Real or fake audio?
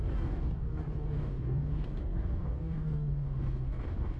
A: fake